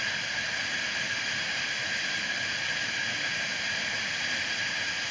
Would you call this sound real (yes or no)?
yes